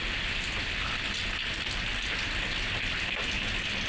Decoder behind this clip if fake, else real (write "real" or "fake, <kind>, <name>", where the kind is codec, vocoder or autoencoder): real